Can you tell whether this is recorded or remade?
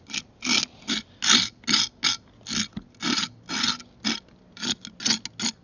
recorded